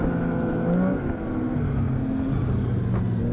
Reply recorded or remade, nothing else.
recorded